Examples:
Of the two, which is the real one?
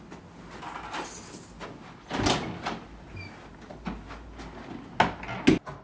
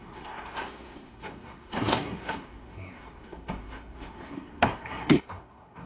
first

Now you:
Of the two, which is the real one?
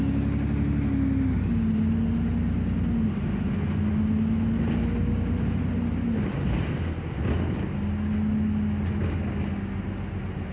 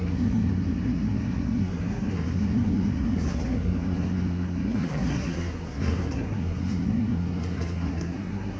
first